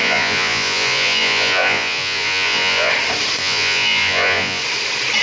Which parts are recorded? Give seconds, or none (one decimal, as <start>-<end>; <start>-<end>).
2.9-3.4; 4.6-5.2